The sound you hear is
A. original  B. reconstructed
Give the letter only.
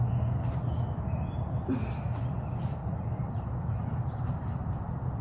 A